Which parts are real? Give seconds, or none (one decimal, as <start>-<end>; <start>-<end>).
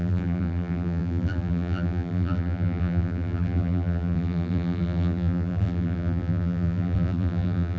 none